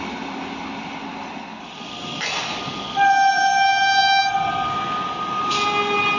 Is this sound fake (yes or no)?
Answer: no